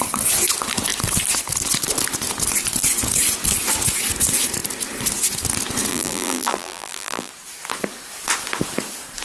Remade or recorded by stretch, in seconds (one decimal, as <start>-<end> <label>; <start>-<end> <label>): 0.0-5.9 recorded; 5.9-7.3 remade; 7.3-9.2 recorded

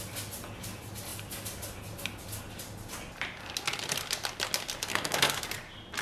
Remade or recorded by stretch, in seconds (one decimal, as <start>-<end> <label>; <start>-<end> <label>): 0.0-4.9 recorded; 4.9-5.4 remade; 5.4-6.0 recorded

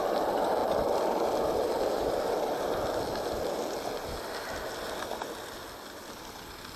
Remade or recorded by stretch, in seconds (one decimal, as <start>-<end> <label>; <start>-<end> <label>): 0.0-6.8 recorded